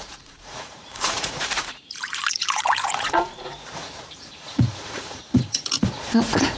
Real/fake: fake